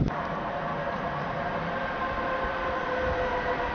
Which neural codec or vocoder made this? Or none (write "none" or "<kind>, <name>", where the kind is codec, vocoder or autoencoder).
none